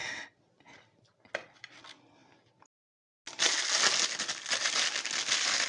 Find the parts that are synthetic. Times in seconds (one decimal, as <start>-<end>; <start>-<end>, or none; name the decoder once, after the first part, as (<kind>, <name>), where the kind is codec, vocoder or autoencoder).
none